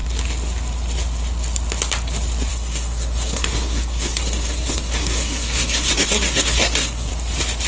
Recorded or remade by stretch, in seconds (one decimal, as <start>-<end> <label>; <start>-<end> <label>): 0.0-2.5 recorded; 2.5-7.1 remade; 7.1-7.7 recorded